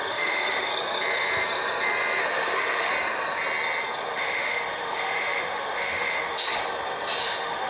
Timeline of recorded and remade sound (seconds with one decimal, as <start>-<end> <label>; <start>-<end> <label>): 0.0-0.7 remade; 0.7-2.2 recorded; 2.2-2.9 remade; 2.9-4.1 recorded; 4.1-6.6 remade; 6.6-7.2 recorded; 7.2-7.7 remade